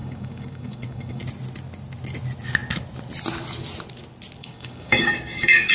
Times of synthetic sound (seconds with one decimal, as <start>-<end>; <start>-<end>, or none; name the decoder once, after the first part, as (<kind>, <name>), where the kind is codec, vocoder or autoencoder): 0.0-1.2 (codec, DAC); 4.4-5.7